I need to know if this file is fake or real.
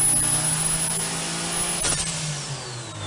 real